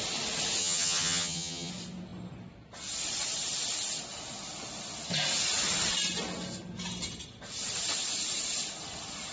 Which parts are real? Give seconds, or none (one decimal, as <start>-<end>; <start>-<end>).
0.0-0.6; 1.7-9.3

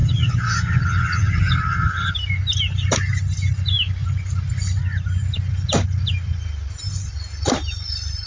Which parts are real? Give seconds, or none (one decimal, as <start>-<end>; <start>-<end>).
2.1-8.3

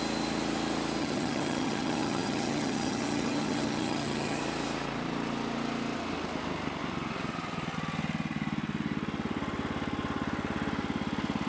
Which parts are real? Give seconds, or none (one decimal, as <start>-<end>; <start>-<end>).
0.0-1.0; 4.4-11.5

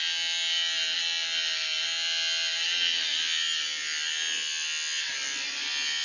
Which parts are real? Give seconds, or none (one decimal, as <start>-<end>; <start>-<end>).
0.0-6.0

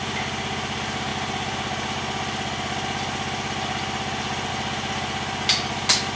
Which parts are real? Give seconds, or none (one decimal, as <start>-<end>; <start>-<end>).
0.0-6.2

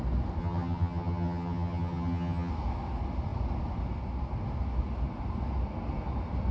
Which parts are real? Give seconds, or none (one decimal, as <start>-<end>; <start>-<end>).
0.0-0.4; 2.5-6.5